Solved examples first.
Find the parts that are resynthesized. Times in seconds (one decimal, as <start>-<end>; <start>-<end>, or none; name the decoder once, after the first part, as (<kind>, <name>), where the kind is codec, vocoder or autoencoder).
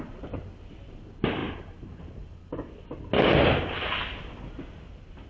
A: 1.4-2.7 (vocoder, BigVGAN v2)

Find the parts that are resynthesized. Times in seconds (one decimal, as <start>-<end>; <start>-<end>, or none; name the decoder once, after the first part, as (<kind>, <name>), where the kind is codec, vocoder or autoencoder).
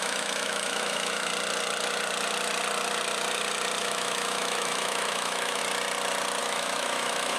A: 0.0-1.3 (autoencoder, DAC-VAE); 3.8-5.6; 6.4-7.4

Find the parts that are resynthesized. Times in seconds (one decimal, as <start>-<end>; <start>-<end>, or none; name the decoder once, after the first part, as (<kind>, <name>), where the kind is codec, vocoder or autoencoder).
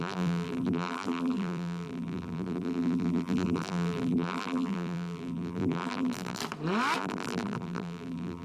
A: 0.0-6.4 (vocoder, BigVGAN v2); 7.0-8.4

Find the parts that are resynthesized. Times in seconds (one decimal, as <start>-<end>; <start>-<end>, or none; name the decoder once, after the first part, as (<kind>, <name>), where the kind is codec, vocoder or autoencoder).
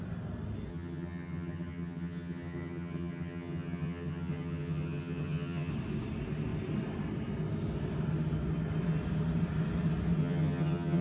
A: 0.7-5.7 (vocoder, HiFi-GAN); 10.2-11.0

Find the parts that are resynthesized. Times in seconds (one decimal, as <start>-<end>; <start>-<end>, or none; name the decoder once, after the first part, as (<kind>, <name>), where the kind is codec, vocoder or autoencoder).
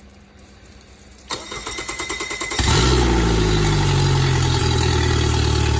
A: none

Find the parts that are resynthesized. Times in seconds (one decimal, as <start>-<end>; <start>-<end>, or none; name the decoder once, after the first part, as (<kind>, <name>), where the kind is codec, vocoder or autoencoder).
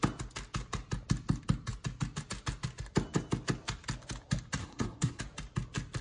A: 4.6-5.2 (codec, SNAC)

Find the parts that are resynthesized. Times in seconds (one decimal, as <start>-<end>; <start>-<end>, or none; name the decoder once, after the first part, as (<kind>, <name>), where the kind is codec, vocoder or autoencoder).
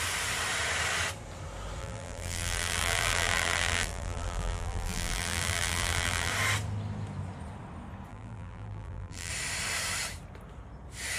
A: 1.8-6.3 (vocoder, BigVGAN v2); 8.1-9.3